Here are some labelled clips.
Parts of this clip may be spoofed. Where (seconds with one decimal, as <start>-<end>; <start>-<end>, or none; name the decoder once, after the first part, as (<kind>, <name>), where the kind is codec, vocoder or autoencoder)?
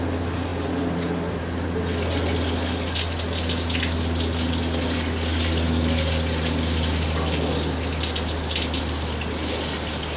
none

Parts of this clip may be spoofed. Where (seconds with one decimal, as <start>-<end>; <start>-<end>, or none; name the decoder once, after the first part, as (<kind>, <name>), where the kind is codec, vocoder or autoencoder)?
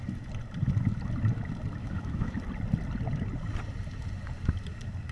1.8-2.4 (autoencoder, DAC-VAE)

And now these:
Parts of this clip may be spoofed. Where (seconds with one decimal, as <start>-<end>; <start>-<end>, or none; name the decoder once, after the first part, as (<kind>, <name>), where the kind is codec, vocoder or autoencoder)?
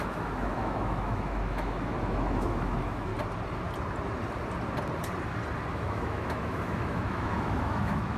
0.0-3.1 (autoencoder, DAC-VAE); 5.7-8.2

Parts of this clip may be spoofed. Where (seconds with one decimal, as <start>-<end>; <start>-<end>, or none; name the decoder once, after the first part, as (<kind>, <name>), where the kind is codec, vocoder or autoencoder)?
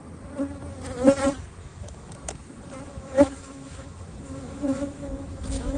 1.6-2.1 (autoencoder, DAC-VAE); 2.9-5.8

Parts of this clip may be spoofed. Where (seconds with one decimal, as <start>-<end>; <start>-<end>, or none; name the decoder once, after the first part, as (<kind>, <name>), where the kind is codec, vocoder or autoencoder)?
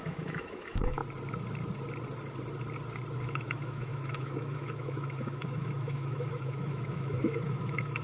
0.0-1.0 (autoencoder, DAC-VAE); 3.2-8.0